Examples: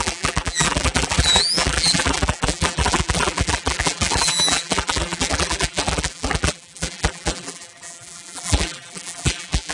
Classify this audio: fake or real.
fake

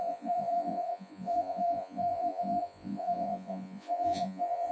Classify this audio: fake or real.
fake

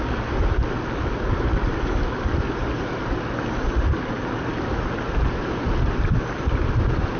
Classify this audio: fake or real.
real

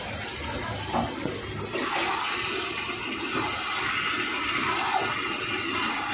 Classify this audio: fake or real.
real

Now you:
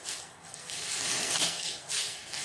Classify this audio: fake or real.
fake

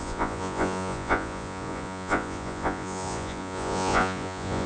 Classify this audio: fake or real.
fake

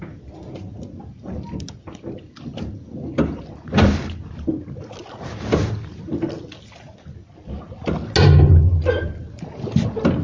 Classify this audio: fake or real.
real